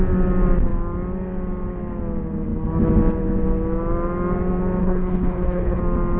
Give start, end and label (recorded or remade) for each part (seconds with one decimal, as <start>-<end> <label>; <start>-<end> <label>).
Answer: 0.0-4.8 recorded; 4.8-5.8 remade; 5.8-6.2 recorded